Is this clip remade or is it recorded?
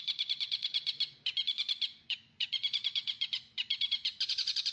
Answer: remade